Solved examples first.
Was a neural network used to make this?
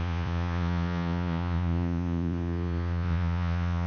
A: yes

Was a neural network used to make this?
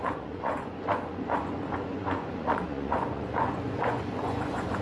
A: yes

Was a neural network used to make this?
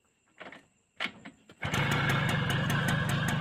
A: no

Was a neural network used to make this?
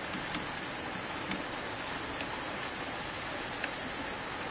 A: no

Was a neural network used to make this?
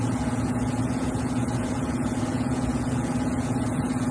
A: yes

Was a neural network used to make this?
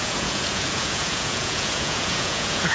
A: yes